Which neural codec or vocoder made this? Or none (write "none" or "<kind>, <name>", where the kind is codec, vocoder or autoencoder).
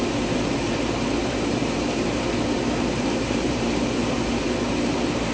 vocoder, BigVGAN v2